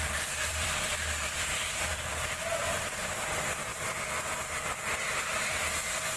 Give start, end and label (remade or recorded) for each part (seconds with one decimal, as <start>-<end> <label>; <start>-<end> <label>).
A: 0.0-3.7 remade; 3.7-5.1 recorded; 5.1-6.2 remade

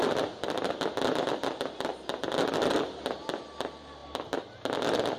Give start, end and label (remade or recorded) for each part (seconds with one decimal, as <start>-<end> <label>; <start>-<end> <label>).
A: 0.0-5.2 recorded

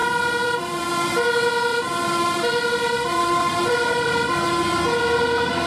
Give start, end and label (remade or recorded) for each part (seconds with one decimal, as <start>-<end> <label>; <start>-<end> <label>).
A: 0.0-0.8 remade; 0.8-1.7 recorded; 1.7-4.5 remade; 4.5-5.7 recorded

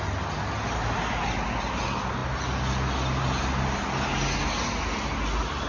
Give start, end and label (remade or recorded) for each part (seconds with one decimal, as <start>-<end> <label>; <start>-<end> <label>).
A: 0.0-5.7 recorded